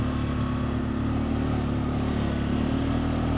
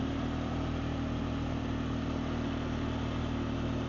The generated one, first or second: second